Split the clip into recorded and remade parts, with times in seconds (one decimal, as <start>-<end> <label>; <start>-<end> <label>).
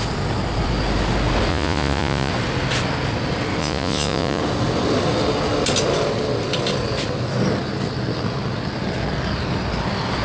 0.0-1.5 recorded; 1.5-2.3 remade; 2.3-3.6 recorded; 3.6-4.4 remade; 4.4-10.2 recorded